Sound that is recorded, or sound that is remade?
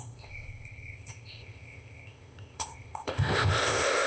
remade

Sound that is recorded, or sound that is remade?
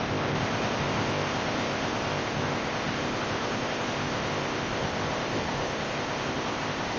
remade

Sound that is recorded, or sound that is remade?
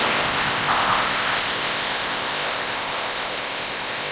remade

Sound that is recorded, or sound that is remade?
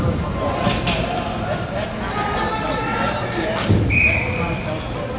recorded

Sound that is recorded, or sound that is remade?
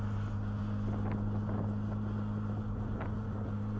recorded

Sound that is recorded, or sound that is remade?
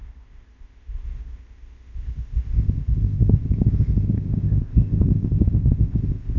remade